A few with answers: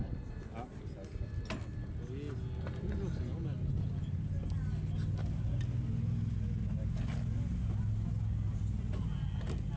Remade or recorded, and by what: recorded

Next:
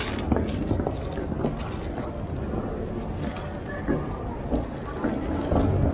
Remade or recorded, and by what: recorded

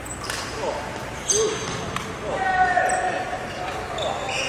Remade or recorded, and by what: recorded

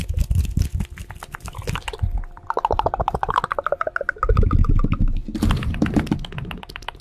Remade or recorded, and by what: recorded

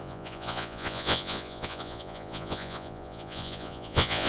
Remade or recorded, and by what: remade, vocoder, Vocos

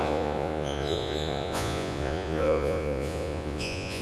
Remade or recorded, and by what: remade, vocoder, Vocos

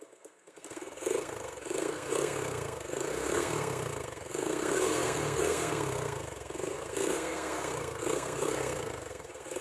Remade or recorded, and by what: remade, codec, SNAC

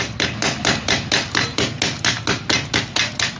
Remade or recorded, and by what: recorded